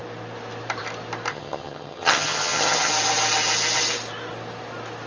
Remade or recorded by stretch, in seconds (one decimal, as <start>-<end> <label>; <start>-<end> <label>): 0.0-1.3 recorded; 1.3-2.9 remade; 2.9-5.1 recorded